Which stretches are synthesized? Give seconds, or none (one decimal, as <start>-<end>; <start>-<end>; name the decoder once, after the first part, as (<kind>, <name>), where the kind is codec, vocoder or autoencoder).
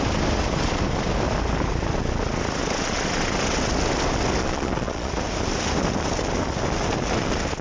4.4-5.1 (vocoder, Vocos)